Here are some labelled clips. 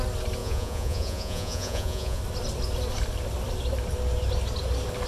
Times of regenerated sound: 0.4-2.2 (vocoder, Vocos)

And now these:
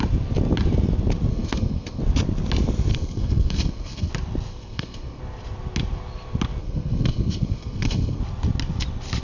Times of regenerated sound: 1.3-2.0 (codec, SNAC); 2.9-4.1; 4.5-5.2; 6.6-8.2